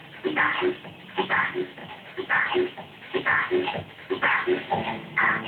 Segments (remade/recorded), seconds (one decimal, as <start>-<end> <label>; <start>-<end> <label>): 0.0-1.1 recorded; 1.1-5.5 remade